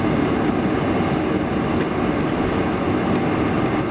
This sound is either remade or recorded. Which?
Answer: recorded